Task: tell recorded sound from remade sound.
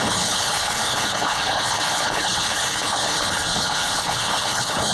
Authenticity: remade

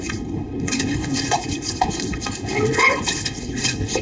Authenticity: remade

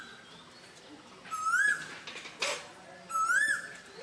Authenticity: recorded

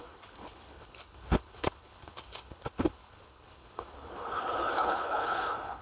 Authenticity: remade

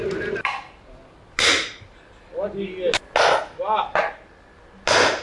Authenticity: recorded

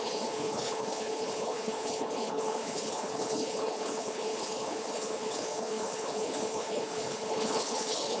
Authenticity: remade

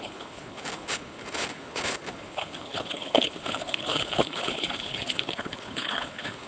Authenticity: remade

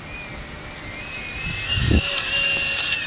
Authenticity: recorded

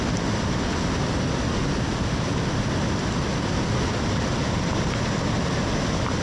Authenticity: recorded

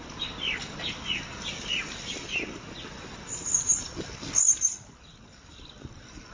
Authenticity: recorded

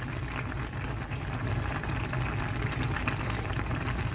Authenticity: recorded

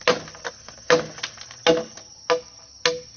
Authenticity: recorded